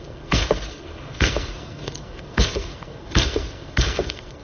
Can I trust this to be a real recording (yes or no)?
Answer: no